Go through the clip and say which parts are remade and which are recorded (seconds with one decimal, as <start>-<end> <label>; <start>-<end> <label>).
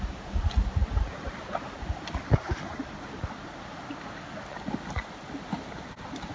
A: 0.0-6.3 recorded